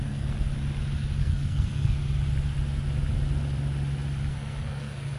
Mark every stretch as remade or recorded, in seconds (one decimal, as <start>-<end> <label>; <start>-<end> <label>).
0.0-0.5 remade; 0.5-1.2 recorded; 1.2-2.0 remade; 2.0-4.3 recorded; 4.3-5.2 remade